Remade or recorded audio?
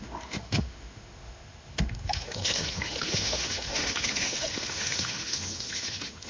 remade